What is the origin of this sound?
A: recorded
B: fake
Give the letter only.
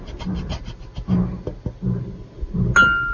A